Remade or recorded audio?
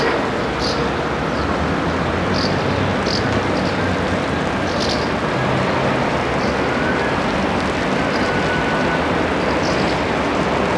recorded